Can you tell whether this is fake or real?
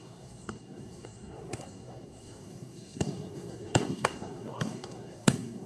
fake